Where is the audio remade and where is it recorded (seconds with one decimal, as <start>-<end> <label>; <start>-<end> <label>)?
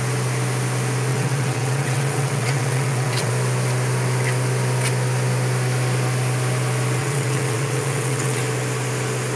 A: 0.0-1.1 recorded; 1.1-3.3 remade; 3.3-7.0 recorded; 7.0-8.4 remade; 8.4-9.4 recorded